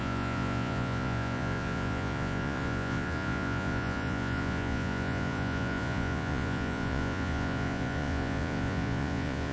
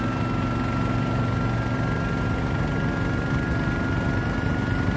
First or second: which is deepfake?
first